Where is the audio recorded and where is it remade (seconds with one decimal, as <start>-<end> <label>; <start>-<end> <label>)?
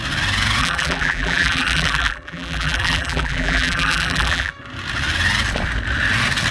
0.0-0.6 recorded; 0.6-4.5 remade; 4.5-6.5 recorded